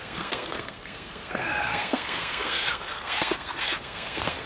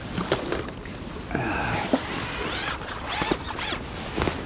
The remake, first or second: first